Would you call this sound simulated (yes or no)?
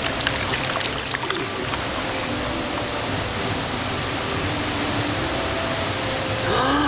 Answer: no